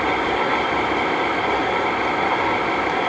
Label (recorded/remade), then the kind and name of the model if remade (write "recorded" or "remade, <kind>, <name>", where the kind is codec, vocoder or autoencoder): recorded